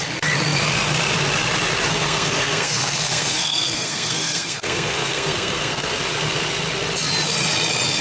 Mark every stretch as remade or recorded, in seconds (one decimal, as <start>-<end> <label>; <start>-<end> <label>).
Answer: 0.0-1.9 recorded; 1.9-6.0 remade; 6.0-8.0 recorded